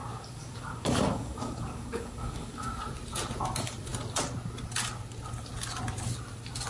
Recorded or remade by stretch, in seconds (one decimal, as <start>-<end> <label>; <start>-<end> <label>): 0.0-2.8 remade; 2.8-6.7 recorded